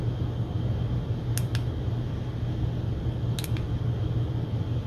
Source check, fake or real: real